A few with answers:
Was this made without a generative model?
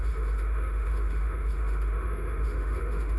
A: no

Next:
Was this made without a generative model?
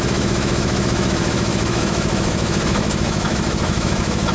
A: no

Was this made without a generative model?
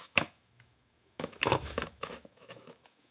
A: no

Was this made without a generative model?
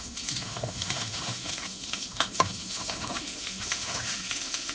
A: no